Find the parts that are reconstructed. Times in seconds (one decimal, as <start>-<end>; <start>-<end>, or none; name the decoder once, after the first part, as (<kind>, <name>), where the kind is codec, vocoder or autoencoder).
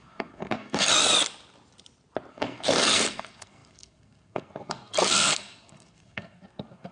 0.0-0.9 (codec, SNAC); 2.3-6.9